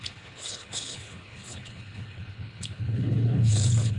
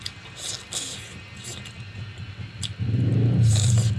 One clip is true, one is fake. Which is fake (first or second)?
first